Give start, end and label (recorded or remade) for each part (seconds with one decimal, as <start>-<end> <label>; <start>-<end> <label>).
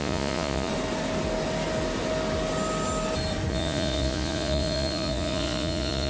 0.0-0.7 remade; 0.7-3.5 recorded; 3.5-6.1 remade